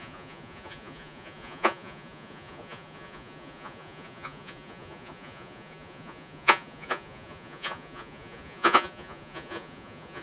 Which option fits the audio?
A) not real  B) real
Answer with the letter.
A